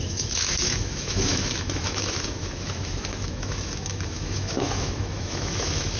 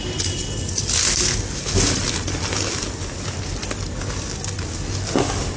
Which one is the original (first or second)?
second